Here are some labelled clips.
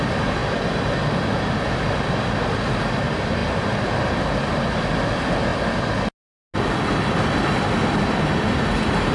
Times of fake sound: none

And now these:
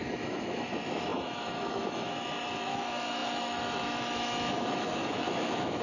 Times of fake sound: 0.0-5.8 (autoencoder, DAC-VAE)

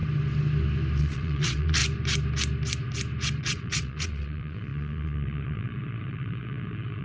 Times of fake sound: 1.0-1.8 (vocoder, WaveNeXt); 3.4-7.0

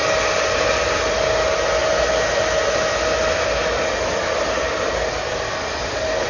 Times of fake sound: none

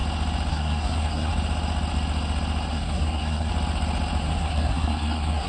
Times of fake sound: 0.5-1.3 (codec, SNAC); 2.7-3.5; 4.2-5.5

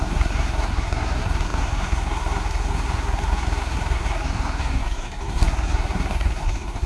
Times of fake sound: 0.0-6.9 (codec, SNAC)